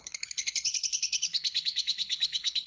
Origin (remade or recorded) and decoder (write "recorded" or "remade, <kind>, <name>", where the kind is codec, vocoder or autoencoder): remade, codec, HILCodec